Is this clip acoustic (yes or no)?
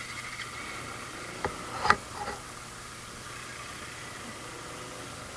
yes